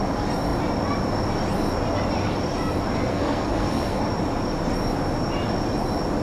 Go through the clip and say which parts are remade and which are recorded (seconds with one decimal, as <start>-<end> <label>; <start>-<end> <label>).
0.0-3.1 recorded; 3.1-4.0 remade; 4.0-6.2 recorded